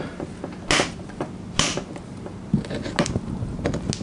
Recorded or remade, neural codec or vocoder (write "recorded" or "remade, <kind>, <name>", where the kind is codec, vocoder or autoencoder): recorded